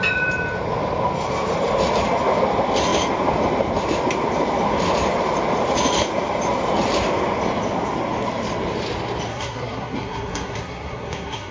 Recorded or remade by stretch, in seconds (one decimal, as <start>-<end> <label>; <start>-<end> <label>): 0.0-9.3 recorded; 9.3-11.5 remade